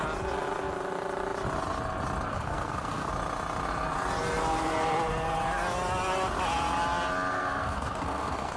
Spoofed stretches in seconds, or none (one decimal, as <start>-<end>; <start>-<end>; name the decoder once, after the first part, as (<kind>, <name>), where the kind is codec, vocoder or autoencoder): 2.3-3.1 (codec, SNAC); 7.3-8.6